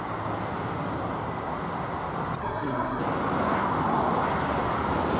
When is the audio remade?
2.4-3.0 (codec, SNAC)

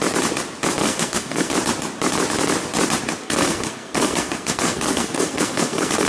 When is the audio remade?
0.8-1.5 (codec, SNAC); 3.2-6.1

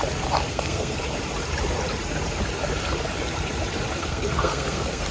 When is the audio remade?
0.5-1.0 (codec, SNAC); 4.0-5.1

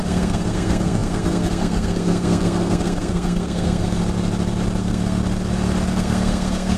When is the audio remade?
0.0-4.0 (codec, SNAC); 4.8-5.2; 5.9-6.8